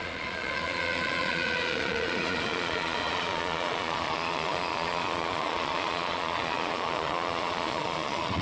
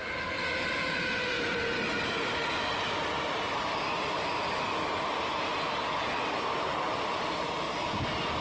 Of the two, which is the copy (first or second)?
first